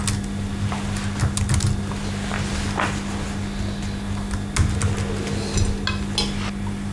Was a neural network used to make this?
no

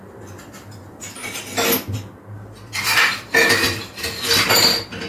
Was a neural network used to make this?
no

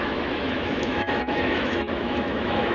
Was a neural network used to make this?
yes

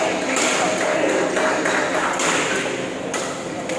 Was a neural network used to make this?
no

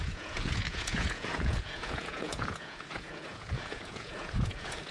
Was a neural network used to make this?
yes